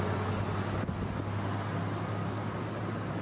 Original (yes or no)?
yes